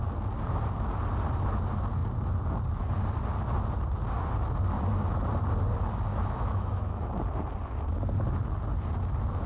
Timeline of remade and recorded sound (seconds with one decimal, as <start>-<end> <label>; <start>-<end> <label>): 0.0-6.1 recorded; 6.1-7.1 remade; 7.1-9.5 recorded